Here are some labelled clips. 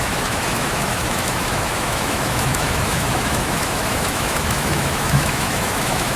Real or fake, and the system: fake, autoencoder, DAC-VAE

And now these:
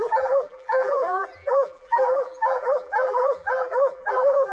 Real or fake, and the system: fake, vocoder, BigVGAN v2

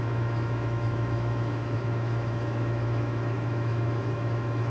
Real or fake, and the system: fake, autoencoder, DAC-VAE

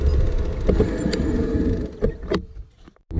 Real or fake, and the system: real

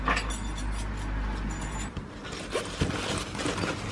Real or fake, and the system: real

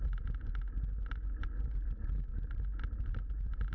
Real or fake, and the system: real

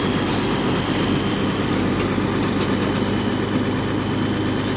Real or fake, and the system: real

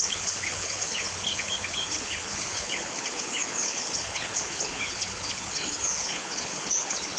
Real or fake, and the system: fake, codec, HILCodec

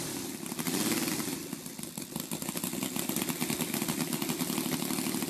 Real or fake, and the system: real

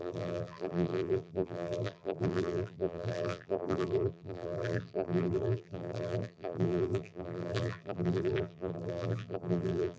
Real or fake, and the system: fake, vocoder, BigVGAN v2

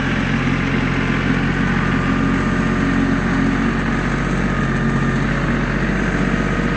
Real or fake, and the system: real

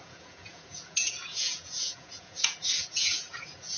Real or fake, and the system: fake, vocoder, Vocos